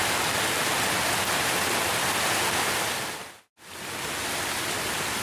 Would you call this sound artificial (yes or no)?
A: no